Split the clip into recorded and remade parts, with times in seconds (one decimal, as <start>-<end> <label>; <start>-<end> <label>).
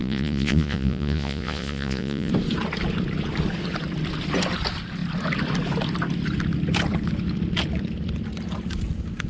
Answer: 0.0-2.3 remade; 2.3-9.3 recorded